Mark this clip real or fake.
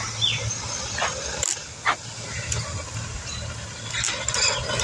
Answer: real